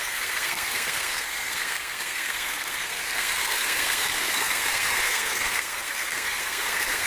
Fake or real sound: fake